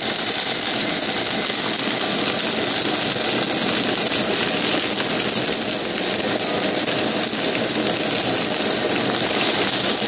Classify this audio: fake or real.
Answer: real